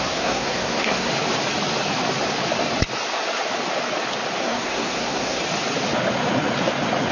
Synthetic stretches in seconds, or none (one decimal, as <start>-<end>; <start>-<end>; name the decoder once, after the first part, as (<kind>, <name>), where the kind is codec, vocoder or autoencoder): 0.0-1.1 (codec, SNAC); 4.4-5.4